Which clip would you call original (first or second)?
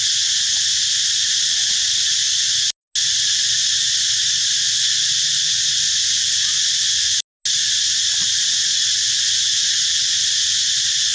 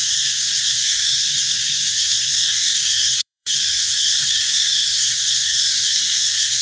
first